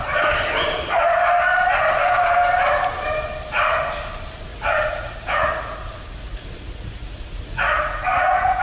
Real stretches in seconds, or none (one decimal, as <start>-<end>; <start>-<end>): 0.0-4.5